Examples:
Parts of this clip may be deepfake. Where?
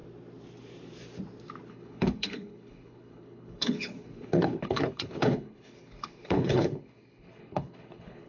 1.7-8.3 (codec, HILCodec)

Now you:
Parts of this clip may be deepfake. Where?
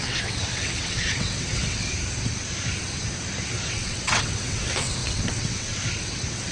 0.0-1.9 (vocoder, WaveNeXt); 3.7-6.5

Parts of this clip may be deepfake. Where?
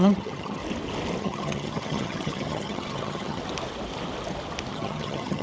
0.0-0.6 (vocoder, HiFi-GAN); 1.2-3.4; 4.7-5.4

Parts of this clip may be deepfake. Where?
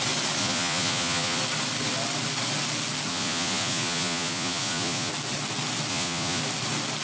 0.4-1.4 (vocoder, Vocos); 3.1-5.1; 5.9-6.4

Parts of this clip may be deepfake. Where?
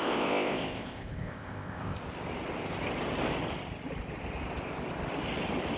0.0-2.0 (codec, ZipCodec)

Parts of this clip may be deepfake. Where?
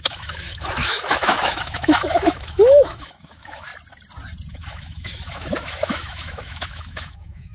0.0-3.7 (autoencoder, DAC-VAE); 4.5-7.5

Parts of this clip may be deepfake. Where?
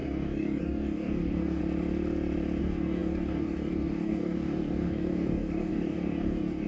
0.0-1.6 (codec, DAC); 2.6-6.7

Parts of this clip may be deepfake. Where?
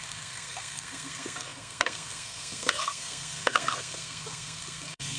0.0-5.2 (codec, SNAC)